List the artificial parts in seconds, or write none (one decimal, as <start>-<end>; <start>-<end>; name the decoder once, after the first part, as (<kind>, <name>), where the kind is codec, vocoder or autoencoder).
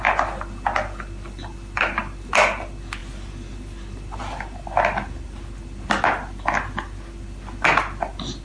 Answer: none